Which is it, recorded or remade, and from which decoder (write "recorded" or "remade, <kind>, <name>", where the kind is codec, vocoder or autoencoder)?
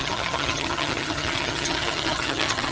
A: remade, vocoder, HiFi-GAN